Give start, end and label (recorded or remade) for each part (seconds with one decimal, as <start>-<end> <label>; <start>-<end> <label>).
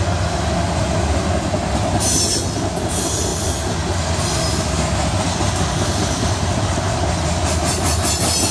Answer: 0.0-8.5 recorded